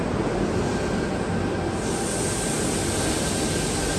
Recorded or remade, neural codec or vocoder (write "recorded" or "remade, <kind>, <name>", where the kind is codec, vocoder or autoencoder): recorded